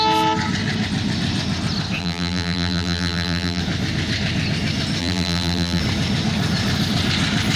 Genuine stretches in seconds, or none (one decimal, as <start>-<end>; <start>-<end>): 0.0-2.0; 3.6-5.0; 5.8-7.6

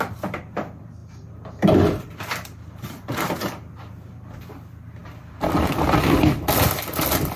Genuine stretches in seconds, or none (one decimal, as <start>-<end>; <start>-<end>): none

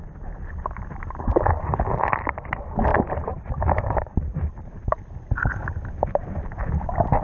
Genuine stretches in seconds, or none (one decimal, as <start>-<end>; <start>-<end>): 0.0-2.9; 4.9-5.6; 6.4-7.2

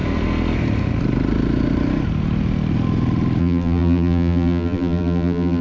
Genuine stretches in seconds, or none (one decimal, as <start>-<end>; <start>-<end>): 0.0-3.4